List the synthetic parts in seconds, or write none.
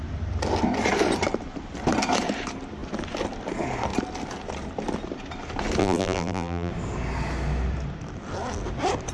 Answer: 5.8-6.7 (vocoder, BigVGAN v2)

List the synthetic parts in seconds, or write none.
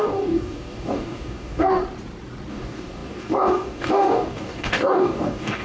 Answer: 0.0-1.8 (codec, DAC); 2.5-5.6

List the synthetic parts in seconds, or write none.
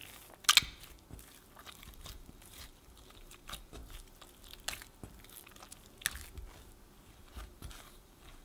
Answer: 1.6-3.8 (vocoder, BigVGAN v2); 7.1-8.4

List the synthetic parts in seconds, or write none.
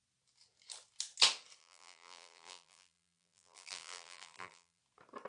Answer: 1.6-4.8 (vocoder, BigVGAN v2)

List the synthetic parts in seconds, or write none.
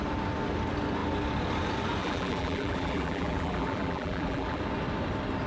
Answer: 2.0-4.6 (vocoder, BigVGAN v2)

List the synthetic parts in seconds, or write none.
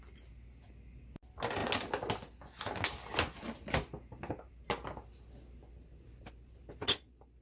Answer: none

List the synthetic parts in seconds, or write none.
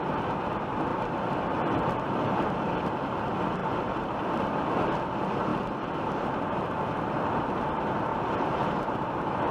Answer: 3.6-4.2 (vocoder, BigVGAN v2); 8.1-9.5